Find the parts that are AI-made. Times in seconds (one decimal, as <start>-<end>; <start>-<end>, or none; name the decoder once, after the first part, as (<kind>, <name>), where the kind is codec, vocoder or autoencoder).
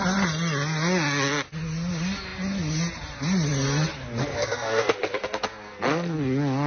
4.2-6.2 (codec, SNAC)